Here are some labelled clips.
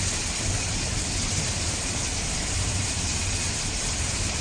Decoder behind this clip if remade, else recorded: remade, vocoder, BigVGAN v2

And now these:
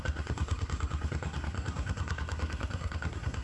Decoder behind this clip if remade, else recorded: remade, codec, SNAC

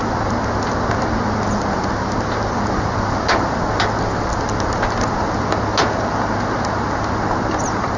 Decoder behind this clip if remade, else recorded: recorded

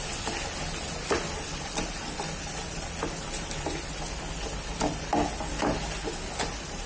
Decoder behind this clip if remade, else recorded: recorded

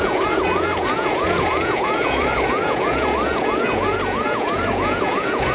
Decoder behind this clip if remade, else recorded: remade, vocoder, Vocos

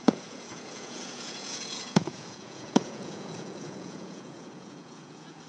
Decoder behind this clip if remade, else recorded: remade, vocoder, Vocos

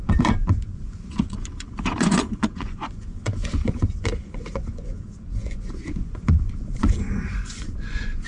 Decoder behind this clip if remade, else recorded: remade, vocoder, Vocos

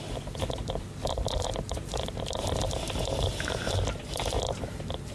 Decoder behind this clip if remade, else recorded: recorded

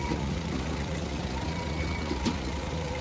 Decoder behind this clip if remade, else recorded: remade, vocoder, Vocos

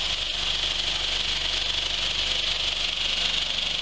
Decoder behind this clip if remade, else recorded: recorded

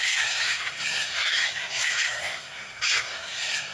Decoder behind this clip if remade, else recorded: remade, codec, SNAC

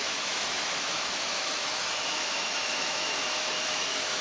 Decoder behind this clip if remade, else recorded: remade, autoencoder, DAC-VAE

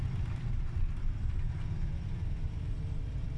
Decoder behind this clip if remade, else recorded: recorded